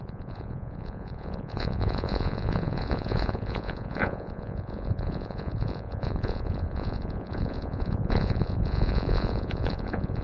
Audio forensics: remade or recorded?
remade